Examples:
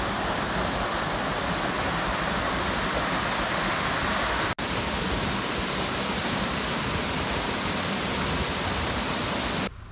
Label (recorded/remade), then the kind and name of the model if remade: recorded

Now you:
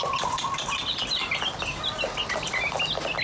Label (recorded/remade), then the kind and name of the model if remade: recorded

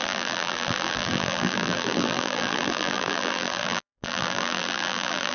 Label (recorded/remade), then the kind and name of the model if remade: remade, vocoder, BigVGAN v2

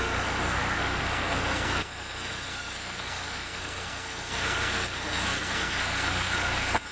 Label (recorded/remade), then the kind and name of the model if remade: remade, codec, SNAC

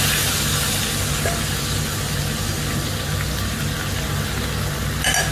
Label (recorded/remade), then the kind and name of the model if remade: recorded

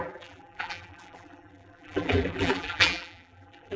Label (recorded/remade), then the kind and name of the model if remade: remade, vocoder, BigVGAN v2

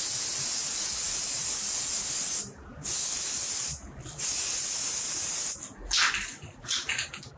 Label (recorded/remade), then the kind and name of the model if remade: recorded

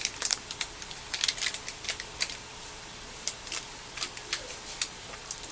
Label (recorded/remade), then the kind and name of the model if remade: remade, vocoder, BigVGAN v2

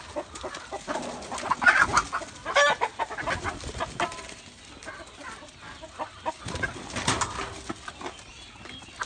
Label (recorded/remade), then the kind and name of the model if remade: recorded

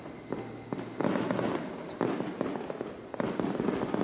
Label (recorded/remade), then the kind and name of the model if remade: recorded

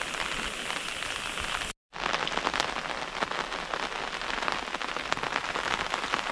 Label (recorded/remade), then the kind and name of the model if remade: recorded